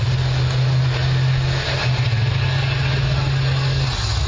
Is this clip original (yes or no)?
yes